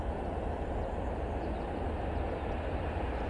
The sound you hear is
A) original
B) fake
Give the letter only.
A